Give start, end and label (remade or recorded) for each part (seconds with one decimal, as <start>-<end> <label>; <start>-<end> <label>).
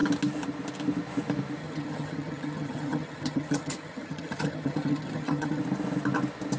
0.0-1.6 recorded; 1.6-5.6 remade; 5.6-6.6 recorded